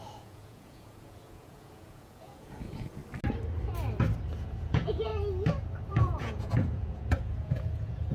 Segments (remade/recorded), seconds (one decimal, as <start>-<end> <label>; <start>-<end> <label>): 0.0-3.0 remade; 3.0-4.4 recorded; 4.4-5.1 remade; 5.1-5.9 recorded; 5.9-8.1 remade